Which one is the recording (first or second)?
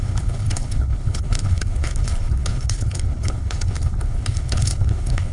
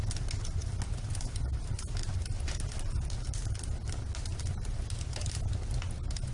second